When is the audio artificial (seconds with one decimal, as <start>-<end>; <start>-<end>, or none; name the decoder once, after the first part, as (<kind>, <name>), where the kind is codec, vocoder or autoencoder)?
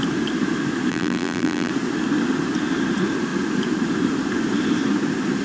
0.9-1.7 (vocoder, BigVGAN v2)